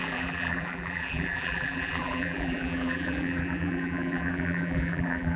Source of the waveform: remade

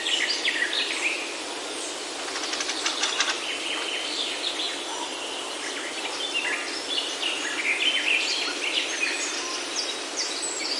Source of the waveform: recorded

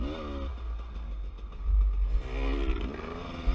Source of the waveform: recorded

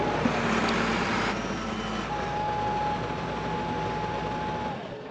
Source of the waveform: recorded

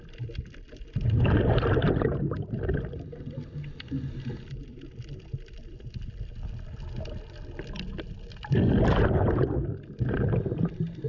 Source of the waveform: recorded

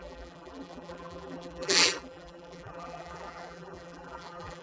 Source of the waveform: remade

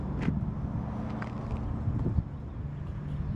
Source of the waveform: recorded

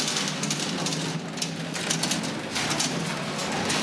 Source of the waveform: recorded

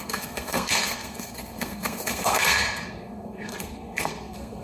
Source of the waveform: remade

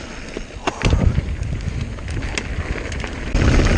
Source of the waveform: recorded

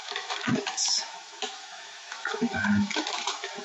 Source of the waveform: remade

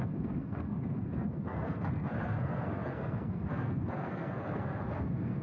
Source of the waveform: remade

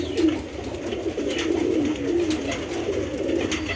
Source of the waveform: recorded